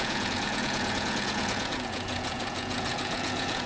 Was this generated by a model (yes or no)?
yes